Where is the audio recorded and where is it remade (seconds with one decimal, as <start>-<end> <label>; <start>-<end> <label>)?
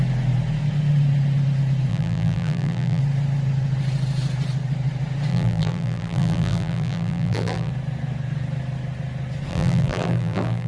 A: 0.0-1.9 recorded; 1.9-3.0 remade; 3.0-5.3 recorded; 5.3-7.7 remade; 7.7-9.5 recorded; 9.5-10.7 remade